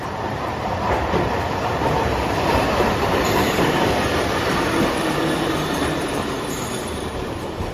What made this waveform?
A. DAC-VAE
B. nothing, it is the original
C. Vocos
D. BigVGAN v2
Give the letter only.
D